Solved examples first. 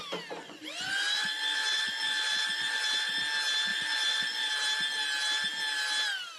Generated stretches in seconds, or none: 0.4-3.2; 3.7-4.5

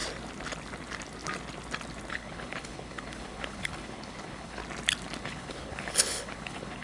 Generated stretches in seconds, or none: 2.1-4.6; 5.2-6.8

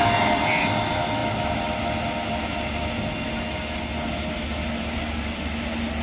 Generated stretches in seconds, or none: none

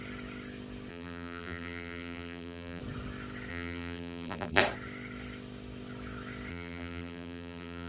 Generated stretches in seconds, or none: 0.9-2.8; 3.5-4.6; 6.5-7.9

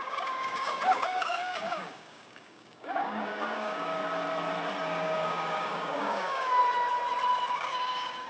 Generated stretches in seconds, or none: 0.0-4.0; 4.8-6.6; 7.5-8.3